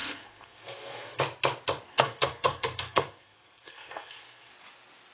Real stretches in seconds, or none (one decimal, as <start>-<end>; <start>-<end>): 1.2-1.9; 4.5-5.1